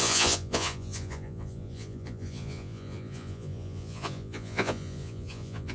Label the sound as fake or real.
fake